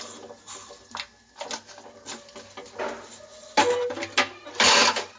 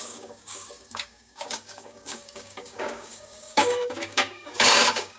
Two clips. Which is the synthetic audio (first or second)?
second